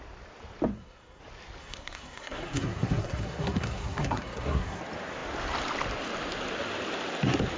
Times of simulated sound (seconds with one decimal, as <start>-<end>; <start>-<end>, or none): 0.7-1.2; 1.6-4.8